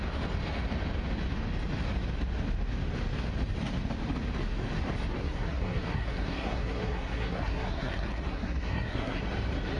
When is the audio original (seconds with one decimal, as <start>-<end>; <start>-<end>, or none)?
0.0-5.2; 9.2-9.8